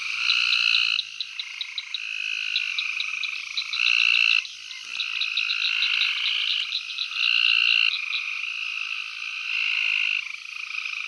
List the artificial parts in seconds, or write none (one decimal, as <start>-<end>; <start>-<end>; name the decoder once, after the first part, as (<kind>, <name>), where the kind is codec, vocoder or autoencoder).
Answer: 3.1-3.8 (vocoder, BigVGAN v2); 4.9-5.5; 6.5-7.9